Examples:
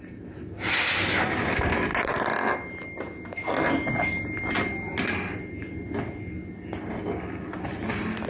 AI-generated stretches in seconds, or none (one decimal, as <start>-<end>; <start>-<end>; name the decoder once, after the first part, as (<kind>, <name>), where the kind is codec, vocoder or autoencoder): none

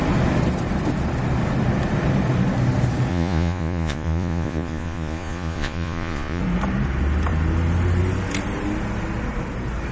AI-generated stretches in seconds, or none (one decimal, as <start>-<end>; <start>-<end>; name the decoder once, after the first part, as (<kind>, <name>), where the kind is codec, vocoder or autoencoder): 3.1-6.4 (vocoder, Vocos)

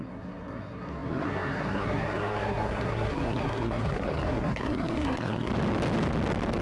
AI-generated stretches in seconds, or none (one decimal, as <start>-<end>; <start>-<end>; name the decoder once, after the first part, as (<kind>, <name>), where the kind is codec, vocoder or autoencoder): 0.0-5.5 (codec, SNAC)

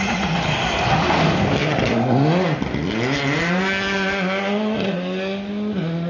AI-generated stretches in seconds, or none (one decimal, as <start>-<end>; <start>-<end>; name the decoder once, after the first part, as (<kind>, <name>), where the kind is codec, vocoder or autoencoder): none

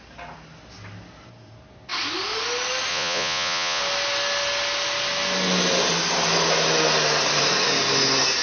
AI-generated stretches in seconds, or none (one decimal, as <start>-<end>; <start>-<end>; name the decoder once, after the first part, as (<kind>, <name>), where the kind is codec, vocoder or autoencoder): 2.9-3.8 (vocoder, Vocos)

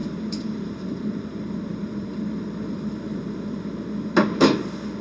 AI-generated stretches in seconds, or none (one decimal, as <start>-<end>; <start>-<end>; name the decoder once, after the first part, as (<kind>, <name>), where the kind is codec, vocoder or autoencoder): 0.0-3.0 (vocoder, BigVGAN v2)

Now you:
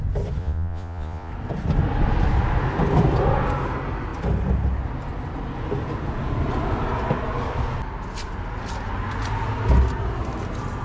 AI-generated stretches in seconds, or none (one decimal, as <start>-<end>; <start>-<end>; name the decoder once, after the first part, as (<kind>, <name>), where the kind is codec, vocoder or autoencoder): 0.4-1.3 (vocoder, Vocos)